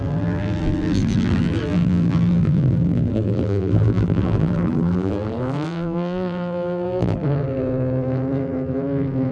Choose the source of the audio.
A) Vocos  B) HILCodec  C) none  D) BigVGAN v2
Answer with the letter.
D